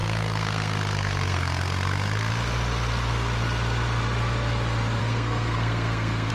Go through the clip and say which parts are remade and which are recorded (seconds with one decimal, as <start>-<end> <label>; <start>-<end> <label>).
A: 0.0-2.3 remade; 2.3-5.0 recorded; 5.0-6.3 remade